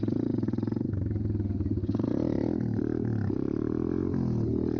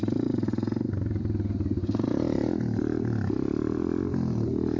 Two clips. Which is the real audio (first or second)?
first